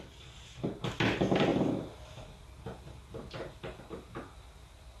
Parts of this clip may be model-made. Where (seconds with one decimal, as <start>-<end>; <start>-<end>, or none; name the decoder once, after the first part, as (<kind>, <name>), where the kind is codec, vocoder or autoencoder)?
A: none